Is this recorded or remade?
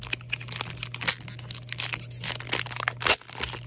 recorded